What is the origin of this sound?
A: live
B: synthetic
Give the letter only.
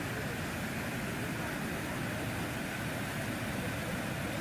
A